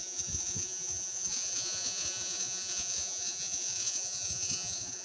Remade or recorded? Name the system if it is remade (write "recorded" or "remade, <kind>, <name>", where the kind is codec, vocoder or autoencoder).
remade, vocoder, Vocos